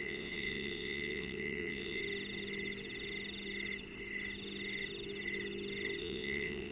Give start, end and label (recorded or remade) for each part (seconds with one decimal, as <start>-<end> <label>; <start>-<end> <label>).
0.0-2.0 remade; 2.0-6.0 recorded; 6.0-6.7 remade